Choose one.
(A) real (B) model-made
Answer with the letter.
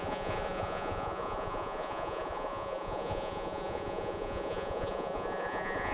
B